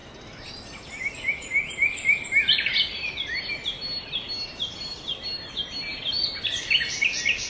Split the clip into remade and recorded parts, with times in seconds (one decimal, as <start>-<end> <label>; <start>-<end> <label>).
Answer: 0.0-7.5 recorded